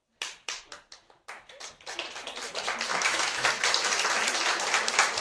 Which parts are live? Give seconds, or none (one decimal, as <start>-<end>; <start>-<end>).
0.0-2.9; 3.5-5.2